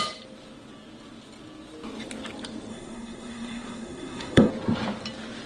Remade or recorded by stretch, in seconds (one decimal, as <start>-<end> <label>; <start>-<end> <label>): 0.0-2.7 recorded; 2.7-4.5 remade; 4.5-5.5 recorded

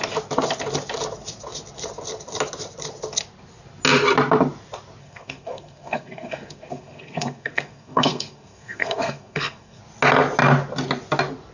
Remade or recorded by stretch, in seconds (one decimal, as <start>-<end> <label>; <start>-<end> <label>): 0.0-5.0 recorded; 5.0-9.8 remade; 9.8-11.5 recorded

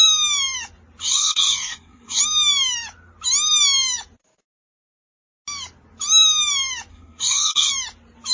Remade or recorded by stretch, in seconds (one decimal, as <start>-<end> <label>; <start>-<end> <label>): 0.0-1.0 recorded; 1.0-2.2 remade; 2.2-6.9 recorded; 6.9-7.7 remade; 7.7-8.3 recorded